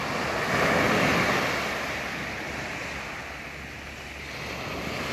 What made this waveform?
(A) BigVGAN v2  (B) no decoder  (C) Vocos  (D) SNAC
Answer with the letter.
B